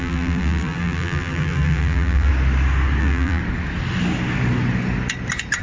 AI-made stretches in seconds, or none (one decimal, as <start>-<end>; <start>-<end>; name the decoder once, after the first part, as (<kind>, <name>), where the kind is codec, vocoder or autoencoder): 0.0-2.3 (vocoder, BigVGAN v2); 3.0-3.4